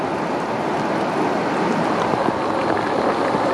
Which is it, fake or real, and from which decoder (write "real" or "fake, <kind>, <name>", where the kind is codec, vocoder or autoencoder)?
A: real